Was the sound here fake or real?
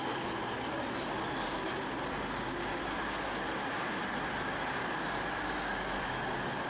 real